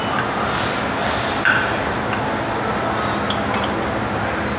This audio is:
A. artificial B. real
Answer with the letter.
B